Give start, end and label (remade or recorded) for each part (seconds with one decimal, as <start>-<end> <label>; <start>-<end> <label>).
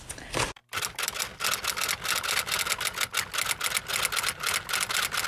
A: 0.0-5.3 recorded